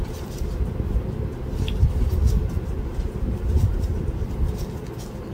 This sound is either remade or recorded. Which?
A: recorded